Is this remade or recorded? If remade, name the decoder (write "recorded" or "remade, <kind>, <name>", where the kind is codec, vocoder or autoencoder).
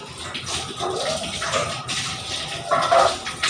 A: recorded